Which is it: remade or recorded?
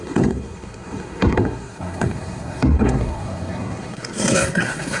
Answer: remade